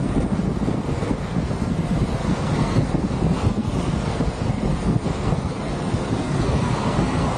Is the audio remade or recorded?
remade